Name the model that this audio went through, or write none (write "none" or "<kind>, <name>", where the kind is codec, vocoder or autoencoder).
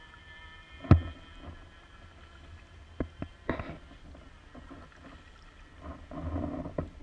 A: none